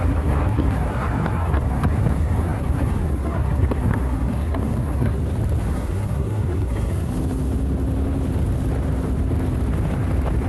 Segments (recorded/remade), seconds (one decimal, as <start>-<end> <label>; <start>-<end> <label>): 0.0-5.2 remade; 5.2-5.7 recorded; 5.7-7.1 remade; 7.1-10.5 recorded